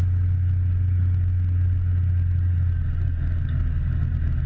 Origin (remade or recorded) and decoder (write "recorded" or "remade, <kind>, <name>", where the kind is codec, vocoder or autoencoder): recorded